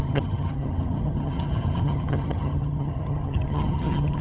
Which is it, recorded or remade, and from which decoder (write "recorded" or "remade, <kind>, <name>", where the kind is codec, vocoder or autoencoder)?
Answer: remade, vocoder, HiFi-GAN